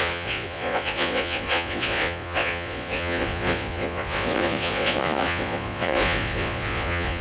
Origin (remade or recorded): remade